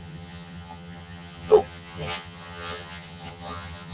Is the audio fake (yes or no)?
yes